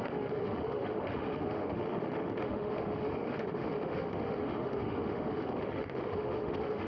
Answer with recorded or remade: remade